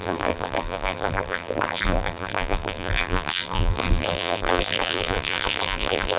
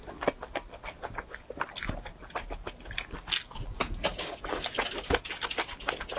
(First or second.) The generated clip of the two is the first